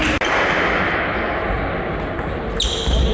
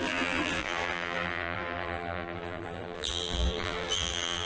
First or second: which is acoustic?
first